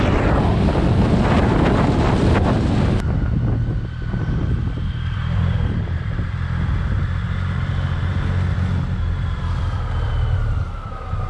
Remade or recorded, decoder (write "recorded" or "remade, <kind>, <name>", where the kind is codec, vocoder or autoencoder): recorded